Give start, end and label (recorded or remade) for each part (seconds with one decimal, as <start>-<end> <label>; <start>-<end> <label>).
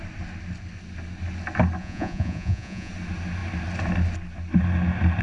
0.0-1.8 recorded; 1.8-2.9 remade; 2.9-5.2 recorded